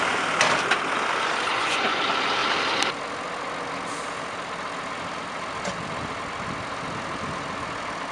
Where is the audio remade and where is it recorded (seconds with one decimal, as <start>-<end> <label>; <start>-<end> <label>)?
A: 0.0-1.5 recorded; 1.5-2.0 remade; 2.0-8.1 recorded